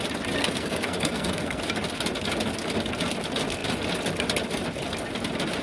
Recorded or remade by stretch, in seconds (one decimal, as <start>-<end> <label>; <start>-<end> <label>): 0.0-0.4 recorded; 0.4-1.6 remade; 1.6-5.6 recorded